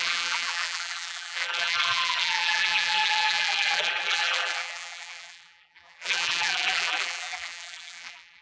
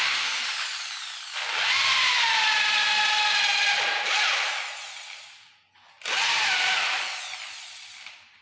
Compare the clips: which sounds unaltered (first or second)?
second